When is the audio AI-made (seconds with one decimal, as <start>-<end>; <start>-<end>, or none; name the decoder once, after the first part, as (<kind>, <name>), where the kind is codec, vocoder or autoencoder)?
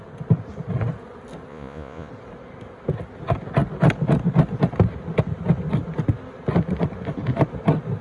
1.5-2.1 (vocoder, Vocos)